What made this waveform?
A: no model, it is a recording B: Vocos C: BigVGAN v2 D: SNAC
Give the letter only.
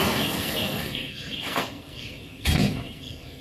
D